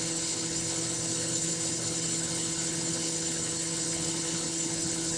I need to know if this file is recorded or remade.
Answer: remade